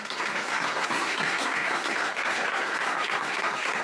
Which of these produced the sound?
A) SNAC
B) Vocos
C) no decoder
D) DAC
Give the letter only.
A